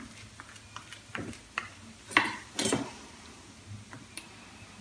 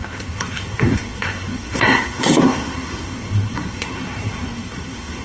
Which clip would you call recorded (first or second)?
first